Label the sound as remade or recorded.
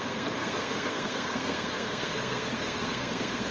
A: remade